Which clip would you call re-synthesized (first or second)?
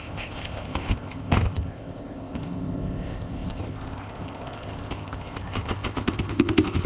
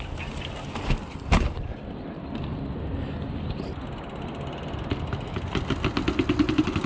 first